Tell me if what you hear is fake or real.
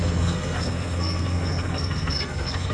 fake